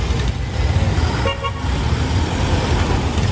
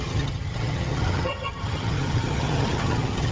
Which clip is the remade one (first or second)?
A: second